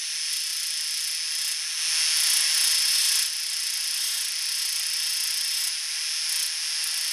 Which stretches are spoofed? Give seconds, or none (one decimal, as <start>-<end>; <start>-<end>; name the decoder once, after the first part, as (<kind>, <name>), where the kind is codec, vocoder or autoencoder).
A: none